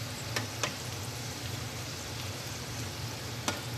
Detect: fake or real real